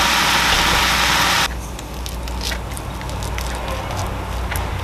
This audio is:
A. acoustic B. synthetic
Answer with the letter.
A